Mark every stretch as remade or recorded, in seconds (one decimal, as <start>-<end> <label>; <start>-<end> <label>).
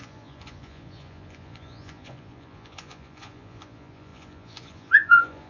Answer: 0.0-5.5 remade